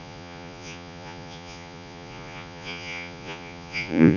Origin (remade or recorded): remade